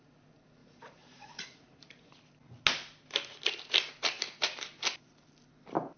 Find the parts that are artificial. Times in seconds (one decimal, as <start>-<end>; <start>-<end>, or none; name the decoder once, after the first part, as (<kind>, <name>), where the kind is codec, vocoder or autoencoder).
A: 0.6-2.1 (vocoder, Vocos)